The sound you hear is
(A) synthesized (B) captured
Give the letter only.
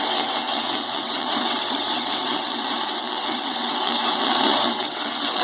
A